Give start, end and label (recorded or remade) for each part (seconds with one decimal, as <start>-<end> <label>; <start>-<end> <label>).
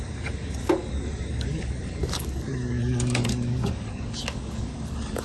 0.0-5.2 remade